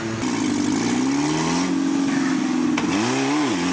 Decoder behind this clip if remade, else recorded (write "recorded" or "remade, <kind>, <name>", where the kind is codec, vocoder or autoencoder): recorded